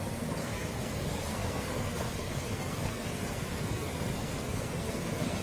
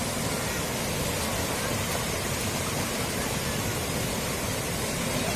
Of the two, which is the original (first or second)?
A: second